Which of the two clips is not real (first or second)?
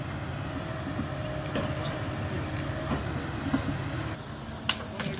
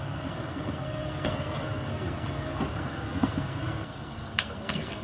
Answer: second